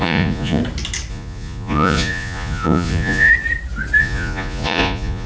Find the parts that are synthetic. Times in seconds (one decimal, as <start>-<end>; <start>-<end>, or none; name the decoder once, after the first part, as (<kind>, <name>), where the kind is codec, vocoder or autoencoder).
0.0-0.6 (vocoder, Vocos); 1.1-3.3; 4.0-5.3